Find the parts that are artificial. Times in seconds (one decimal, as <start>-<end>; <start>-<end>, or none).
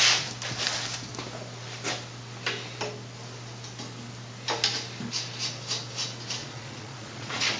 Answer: 6.4-7.6